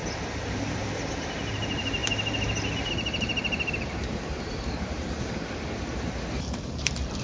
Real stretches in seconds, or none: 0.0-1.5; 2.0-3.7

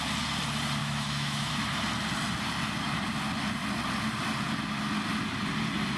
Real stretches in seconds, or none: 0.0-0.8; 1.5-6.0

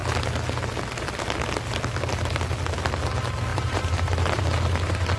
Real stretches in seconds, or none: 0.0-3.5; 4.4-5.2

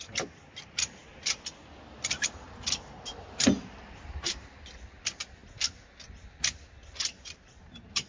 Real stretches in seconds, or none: 0.0-8.1